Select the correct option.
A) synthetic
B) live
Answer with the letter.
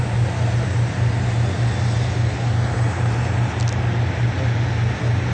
B